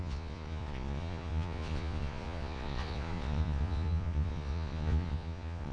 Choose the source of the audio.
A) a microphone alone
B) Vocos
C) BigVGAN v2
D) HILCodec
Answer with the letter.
B